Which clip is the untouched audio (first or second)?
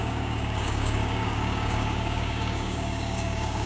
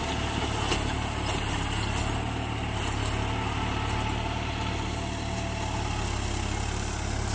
second